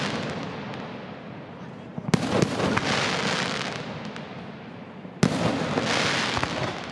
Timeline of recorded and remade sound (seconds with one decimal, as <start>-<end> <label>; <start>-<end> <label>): 0.0-6.9 recorded